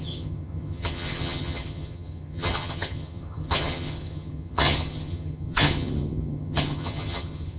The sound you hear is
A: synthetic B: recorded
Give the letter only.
A